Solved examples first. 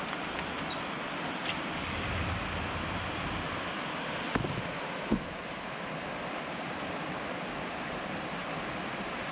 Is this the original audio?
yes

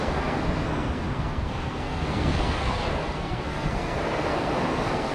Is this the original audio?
no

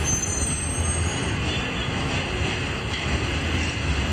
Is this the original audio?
yes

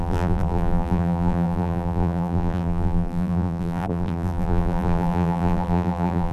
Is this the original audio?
no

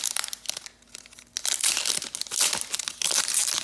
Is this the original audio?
yes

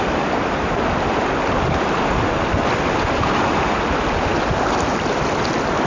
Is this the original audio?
yes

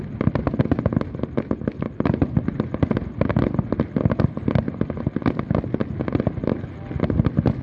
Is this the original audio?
yes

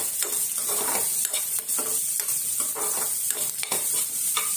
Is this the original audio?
no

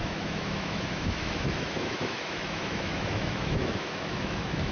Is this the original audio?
no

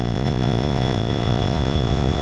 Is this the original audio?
no